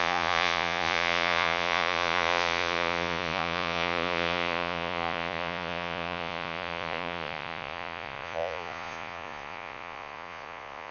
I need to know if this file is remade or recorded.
remade